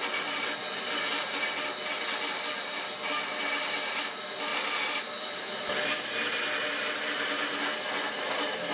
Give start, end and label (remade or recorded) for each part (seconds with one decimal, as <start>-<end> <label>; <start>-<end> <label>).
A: 0.0-4.5 recorded; 4.5-6.3 remade; 6.3-8.7 recorded